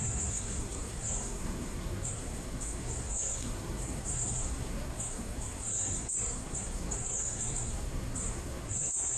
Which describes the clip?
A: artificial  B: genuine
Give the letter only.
A